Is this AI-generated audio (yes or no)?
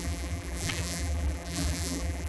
yes